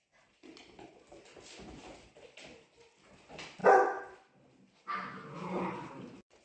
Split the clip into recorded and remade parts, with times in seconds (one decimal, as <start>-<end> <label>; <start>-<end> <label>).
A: 0.0-6.4 recorded